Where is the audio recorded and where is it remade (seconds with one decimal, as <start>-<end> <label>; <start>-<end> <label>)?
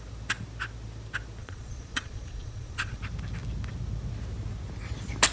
0.0-1.4 recorded; 1.4-3.0 remade; 3.0-5.3 recorded